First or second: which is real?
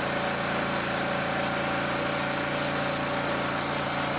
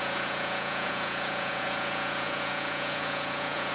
first